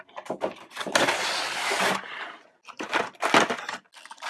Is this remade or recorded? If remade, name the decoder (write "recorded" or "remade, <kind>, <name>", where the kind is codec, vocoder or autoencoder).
recorded